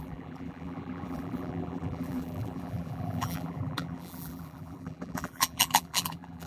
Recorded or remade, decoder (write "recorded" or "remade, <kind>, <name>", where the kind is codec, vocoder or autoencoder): remade, vocoder, BigVGAN v2